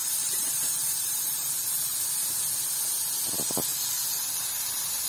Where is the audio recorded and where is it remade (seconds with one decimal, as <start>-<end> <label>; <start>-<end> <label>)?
0.0-1.5 remade; 1.5-5.1 recorded